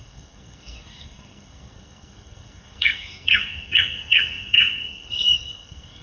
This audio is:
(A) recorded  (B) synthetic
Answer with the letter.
B